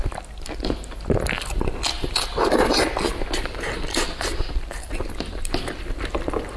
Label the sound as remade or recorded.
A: recorded